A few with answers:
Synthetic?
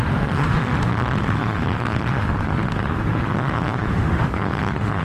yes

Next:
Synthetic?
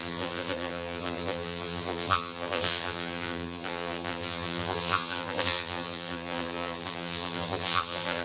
yes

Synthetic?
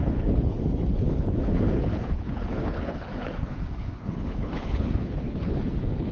yes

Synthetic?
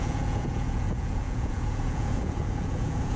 yes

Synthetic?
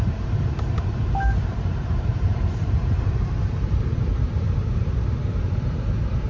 yes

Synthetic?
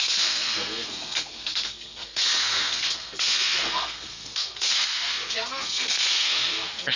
yes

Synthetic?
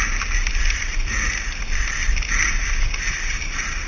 no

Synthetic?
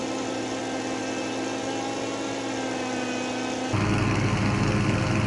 no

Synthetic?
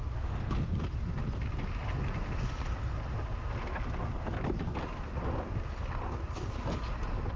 no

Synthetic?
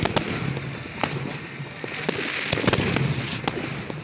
no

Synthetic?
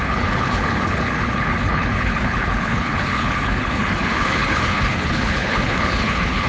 yes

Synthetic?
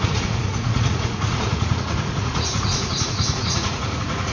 yes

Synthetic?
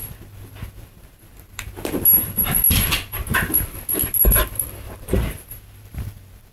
yes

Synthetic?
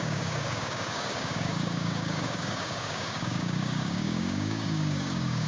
yes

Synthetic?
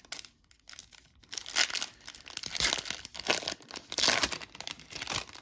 no